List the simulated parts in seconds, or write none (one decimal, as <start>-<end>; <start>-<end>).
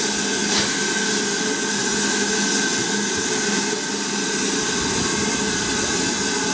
none